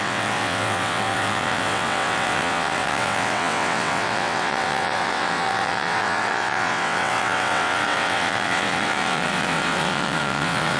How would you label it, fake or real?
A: fake